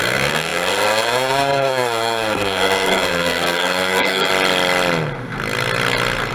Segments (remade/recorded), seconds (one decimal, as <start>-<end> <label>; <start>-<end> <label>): 0.0-4.3 remade; 4.3-6.3 recorded